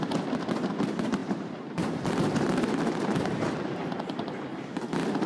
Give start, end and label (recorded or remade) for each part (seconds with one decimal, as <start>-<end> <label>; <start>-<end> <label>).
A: 0.0-1.2 recorded; 1.2-4.4 remade; 4.4-5.3 recorded